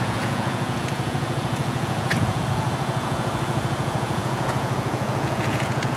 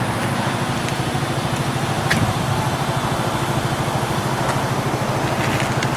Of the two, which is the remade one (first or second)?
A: first